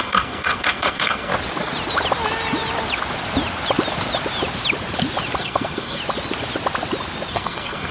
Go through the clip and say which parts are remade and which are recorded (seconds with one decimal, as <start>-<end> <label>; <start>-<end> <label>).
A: 0.0-1.3 remade; 1.3-5.4 recorded; 5.4-6.0 remade; 6.0-7.3 recorded; 7.3-7.9 remade